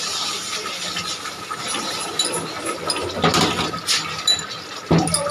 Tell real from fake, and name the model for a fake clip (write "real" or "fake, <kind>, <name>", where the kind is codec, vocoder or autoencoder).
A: real